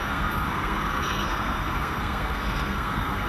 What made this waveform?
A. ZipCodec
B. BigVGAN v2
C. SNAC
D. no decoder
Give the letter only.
C